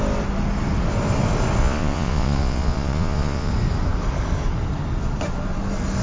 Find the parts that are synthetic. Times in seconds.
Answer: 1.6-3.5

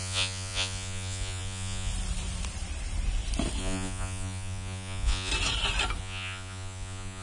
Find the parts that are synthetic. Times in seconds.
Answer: 0.0-1.9; 3.6-5.3; 6.0-7.2

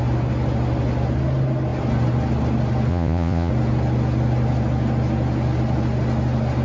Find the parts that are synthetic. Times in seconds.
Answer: 2.9-3.5

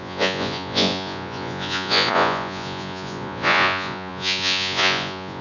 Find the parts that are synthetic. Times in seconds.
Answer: 0.0-5.4

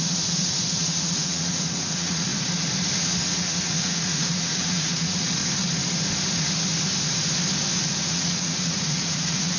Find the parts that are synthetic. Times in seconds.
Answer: 0.0-2.3; 3.0-5.4; 8.0-9.6

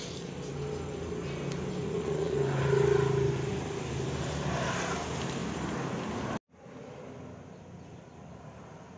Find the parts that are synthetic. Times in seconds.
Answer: 1.8-2.6